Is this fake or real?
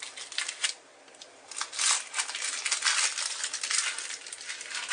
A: real